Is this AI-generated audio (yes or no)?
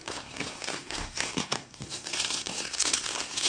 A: yes